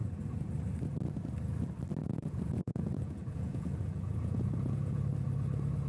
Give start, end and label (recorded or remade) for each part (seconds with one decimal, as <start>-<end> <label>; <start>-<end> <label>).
0.0-0.5 remade; 0.5-2.0 recorded; 2.0-5.0 remade; 5.0-5.9 recorded